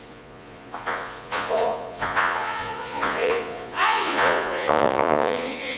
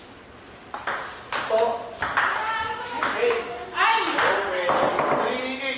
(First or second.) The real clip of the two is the second